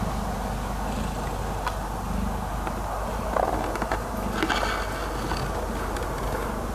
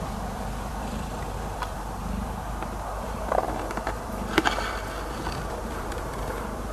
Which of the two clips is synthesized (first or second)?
second